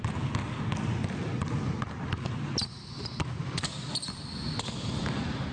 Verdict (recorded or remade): recorded